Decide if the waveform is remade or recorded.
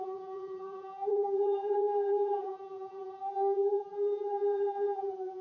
remade